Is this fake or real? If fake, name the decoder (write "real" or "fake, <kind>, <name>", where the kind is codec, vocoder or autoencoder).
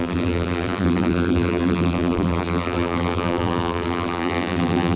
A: fake, vocoder, BigVGAN v2